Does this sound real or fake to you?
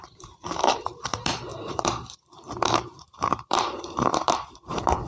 fake